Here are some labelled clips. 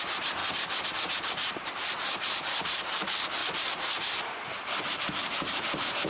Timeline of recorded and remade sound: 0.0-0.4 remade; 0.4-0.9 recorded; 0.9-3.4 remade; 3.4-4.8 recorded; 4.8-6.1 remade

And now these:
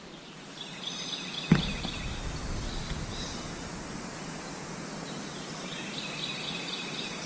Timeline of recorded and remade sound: 0.0-7.3 recorded

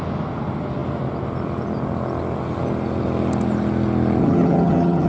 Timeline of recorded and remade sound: 0.0-4.2 recorded; 4.2-5.1 remade

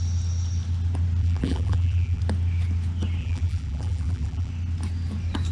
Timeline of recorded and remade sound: 0.0-1.2 recorded; 1.2-2.2 remade; 2.2-3.2 recorded; 3.2-4.5 remade; 4.5-5.5 recorded

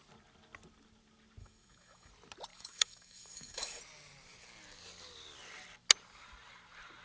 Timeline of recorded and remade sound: 0.0-1.4 recorded; 1.4-2.1 remade; 2.1-2.5 recorded; 2.5-3.8 remade; 3.8-7.0 recorded

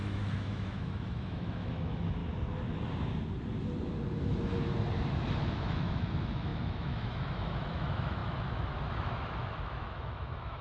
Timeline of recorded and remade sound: 0.0-2.2 remade; 2.2-5.4 recorded; 5.4-10.6 remade

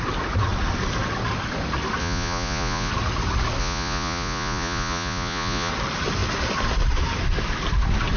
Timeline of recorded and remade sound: 0.0-2.0 recorded; 2.0-2.9 remade; 2.9-3.6 recorded; 3.6-5.7 remade; 5.7-8.2 recorded